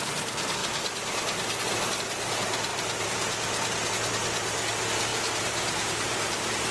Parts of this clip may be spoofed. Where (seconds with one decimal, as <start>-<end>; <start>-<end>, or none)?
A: 2.7-3.9; 5.1-6.7